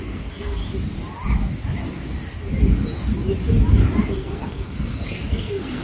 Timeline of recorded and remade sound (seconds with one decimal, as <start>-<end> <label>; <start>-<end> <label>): 0.0-0.6 remade; 0.6-4.1 recorded; 4.1-5.8 remade